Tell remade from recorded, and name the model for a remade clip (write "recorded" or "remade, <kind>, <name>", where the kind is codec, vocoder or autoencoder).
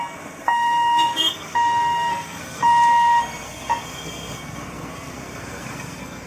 remade, codec, SNAC